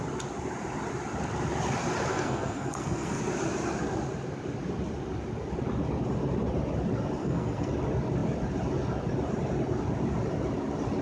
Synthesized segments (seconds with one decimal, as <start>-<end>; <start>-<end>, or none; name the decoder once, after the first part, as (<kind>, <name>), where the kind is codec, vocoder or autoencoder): 2.1-3.2 (codec, SNAC); 7.2-7.7

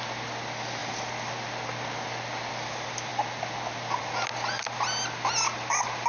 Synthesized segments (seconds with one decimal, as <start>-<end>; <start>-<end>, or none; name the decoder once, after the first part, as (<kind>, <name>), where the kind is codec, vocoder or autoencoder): none

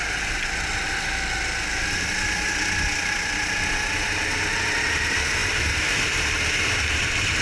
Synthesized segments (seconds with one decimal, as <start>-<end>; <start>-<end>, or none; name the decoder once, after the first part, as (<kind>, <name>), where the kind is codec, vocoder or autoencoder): none

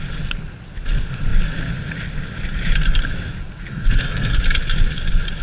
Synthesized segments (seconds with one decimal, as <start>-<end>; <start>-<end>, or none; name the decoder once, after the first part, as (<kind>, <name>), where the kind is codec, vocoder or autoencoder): 3.7-4.4 (codec, SNAC)

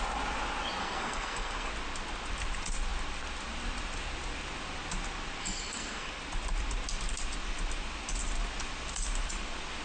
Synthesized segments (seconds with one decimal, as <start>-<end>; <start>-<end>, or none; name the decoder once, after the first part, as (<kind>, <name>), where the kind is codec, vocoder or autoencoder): 0.8-1.7 (codec, SNAC); 5.4-6.1

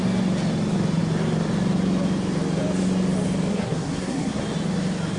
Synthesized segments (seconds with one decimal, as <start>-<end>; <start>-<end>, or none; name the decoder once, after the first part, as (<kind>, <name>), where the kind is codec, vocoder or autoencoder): 3.5-4.4 (codec, SNAC)

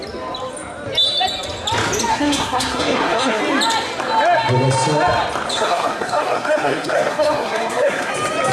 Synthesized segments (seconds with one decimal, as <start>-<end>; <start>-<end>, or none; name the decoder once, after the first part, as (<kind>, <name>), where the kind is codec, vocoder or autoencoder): 2.1-3.4 (codec, SNAC); 5.5-8.1